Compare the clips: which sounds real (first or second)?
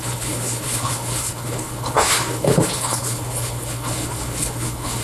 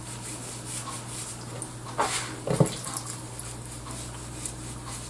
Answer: second